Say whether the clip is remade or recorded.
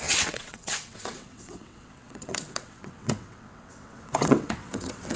remade